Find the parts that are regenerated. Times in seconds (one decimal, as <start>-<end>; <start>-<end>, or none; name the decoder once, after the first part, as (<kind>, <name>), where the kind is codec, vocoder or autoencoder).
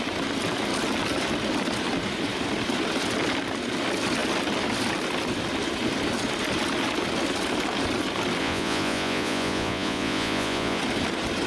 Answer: 8.4-10.8 (vocoder, Vocos)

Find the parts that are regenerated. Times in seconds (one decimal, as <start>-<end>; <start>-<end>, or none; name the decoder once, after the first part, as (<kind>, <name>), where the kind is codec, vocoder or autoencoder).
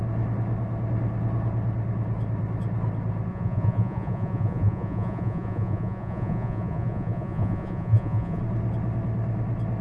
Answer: 3.3-8.4 (vocoder, Vocos)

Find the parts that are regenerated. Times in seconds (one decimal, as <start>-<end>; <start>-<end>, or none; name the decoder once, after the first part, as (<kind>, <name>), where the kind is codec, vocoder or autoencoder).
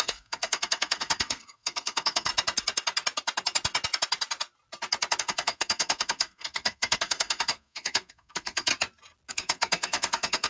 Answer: 0.0-2.3 (codec, SNAC); 5.2-8.7; 9.3-10.5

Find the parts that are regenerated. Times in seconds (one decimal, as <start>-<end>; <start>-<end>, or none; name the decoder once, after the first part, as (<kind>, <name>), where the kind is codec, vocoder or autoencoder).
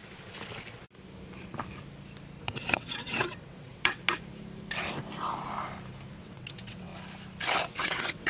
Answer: 2.4-4.0 (vocoder, WaveNeXt); 6.2-6.9; 7.7-8.3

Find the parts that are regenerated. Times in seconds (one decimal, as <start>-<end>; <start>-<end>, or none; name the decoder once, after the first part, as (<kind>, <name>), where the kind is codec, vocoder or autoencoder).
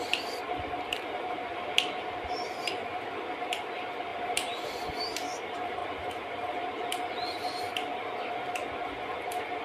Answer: none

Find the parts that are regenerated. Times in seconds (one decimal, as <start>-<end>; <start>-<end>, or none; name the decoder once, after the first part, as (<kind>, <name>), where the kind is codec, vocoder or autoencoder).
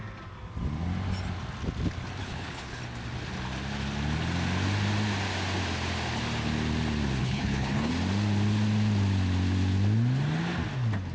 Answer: 2.2-2.8 (codec, HILCodec); 7.2-7.9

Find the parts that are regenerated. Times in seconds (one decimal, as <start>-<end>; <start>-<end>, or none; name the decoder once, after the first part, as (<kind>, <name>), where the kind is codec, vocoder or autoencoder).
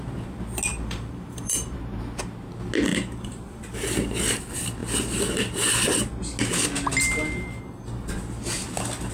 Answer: 0.7-2.2 (vocoder, BigVGAN v2); 2.9-3.6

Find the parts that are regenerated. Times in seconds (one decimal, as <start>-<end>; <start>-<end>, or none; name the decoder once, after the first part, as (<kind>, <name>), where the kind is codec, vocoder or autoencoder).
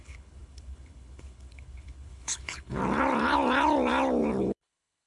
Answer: 0.0-2.8 (codec, HILCodec); 4.4-5.1